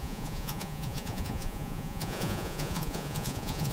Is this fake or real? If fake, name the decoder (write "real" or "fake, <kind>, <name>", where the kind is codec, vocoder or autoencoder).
fake, vocoder, Vocos